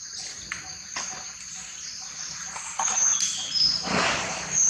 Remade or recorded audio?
recorded